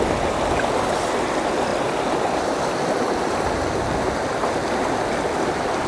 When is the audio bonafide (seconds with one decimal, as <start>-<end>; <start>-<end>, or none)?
0.0-1.7; 2.9-5.9